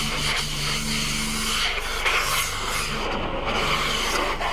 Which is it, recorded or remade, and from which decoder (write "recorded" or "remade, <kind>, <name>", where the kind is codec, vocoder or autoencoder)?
recorded